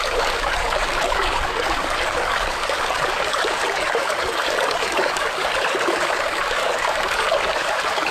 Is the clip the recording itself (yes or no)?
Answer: no